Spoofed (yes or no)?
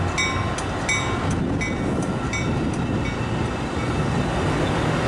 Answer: no